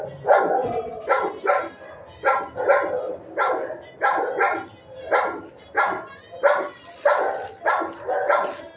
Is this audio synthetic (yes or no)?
no